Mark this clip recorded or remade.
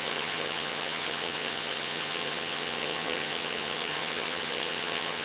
remade